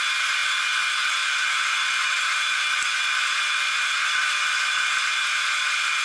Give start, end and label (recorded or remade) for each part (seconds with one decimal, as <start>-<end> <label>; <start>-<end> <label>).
0.0-6.0 recorded